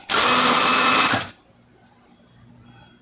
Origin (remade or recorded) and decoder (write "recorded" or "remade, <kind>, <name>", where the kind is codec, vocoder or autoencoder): recorded